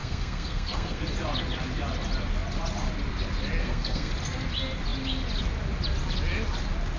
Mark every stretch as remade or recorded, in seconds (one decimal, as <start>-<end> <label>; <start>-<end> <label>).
0.0-1.0 remade; 1.0-3.6 recorded; 3.6-4.1 remade; 4.1-7.0 recorded

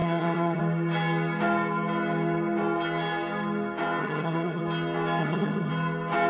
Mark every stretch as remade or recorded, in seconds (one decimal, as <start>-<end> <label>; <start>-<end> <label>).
0.0-0.6 remade; 0.6-4.0 recorded; 4.0-4.6 remade; 4.6-5.2 recorded; 5.2-5.7 remade; 5.7-6.3 recorded

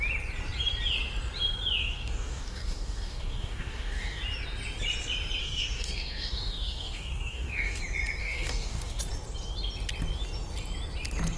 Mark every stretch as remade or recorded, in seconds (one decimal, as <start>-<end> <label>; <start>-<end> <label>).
0.0-1.8 recorded; 1.8-4.2 remade; 4.2-5.4 recorded; 5.4-7.8 remade; 7.8-8.2 recorded; 8.2-9.0 remade; 9.0-11.4 recorded

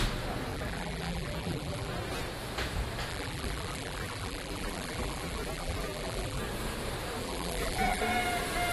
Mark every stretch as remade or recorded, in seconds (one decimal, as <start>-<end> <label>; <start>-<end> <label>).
0.0-0.5 recorded; 0.5-1.9 remade; 1.9-3.1 recorded; 3.1-6.4 remade; 6.4-7.2 recorded; 7.2-8.0 remade; 8.0-8.7 recorded

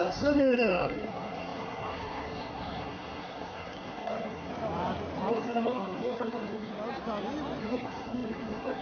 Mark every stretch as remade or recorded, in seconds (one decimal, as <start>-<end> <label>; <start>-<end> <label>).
0.0-4.5 remade; 4.5-5.3 recorded; 5.3-6.7 remade; 6.7-7.6 recorded; 7.6-8.8 remade